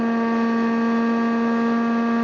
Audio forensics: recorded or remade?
recorded